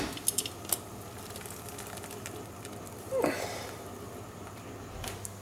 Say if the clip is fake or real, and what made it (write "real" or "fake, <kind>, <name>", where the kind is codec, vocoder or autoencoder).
real